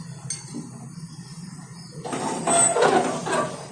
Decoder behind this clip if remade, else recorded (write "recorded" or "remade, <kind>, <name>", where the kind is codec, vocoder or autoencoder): recorded